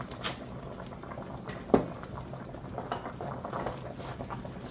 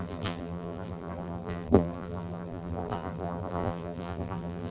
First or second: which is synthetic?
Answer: second